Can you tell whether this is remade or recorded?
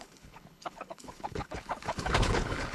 remade